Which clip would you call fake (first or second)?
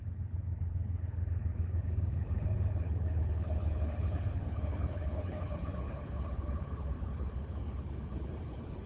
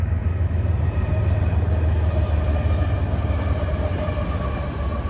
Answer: first